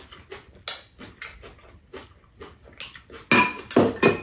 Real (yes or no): yes